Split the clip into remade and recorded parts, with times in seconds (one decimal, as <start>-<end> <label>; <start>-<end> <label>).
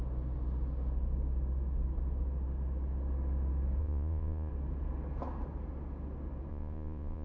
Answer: 0.0-3.8 recorded; 3.8-4.5 remade; 4.5-6.5 recorded; 6.5-7.2 remade